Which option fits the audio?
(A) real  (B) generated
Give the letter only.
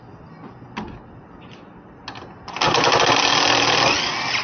A